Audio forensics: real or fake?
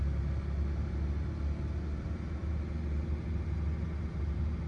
real